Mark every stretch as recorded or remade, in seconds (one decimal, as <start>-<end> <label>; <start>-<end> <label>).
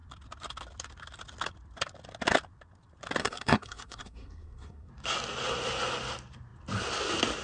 0.0-3.2 recorded; 3.2-4.9 remade; 4.9-7.4 recorded